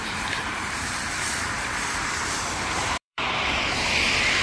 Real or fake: fake